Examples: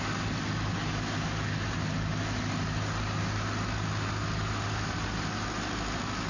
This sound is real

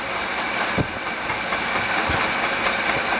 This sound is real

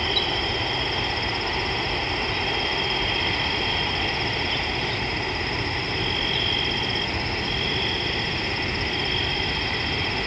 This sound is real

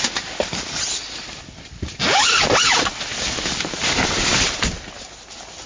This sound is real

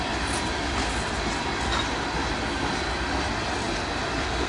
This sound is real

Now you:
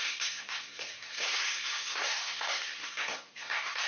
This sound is fake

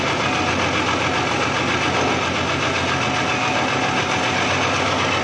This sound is real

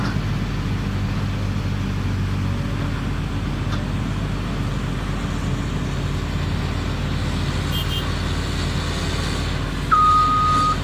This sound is real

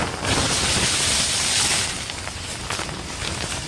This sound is real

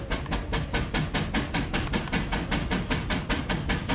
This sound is real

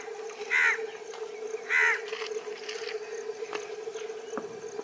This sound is real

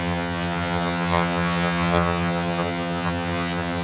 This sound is fake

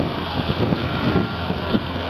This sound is fake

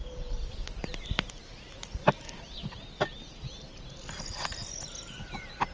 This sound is real